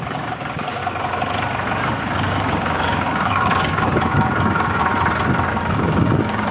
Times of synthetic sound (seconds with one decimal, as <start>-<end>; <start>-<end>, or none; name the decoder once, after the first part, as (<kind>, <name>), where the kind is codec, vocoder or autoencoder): 0.0-0.8 (codec, DAC); 2.0-4.8; 5.5-6.5